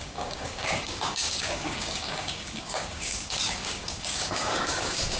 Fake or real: fake